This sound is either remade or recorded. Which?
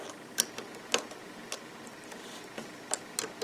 recorded